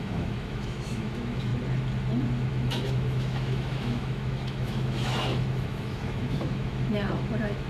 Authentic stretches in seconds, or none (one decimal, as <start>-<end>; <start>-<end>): 1.5-2.5